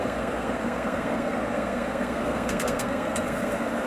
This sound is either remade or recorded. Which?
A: remade